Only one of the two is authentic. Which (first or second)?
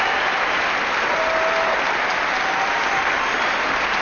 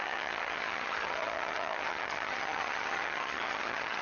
first